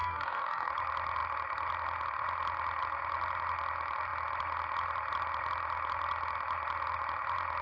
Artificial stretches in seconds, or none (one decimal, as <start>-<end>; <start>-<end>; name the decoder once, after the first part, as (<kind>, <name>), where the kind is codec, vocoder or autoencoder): 0.0-0.7 (codec, DAC)